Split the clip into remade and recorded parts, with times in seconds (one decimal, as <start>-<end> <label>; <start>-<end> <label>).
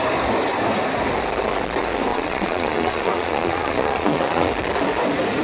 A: 0.0-2.1 recorded; 2.1-4.5 remade; 4.5-5.4 recorded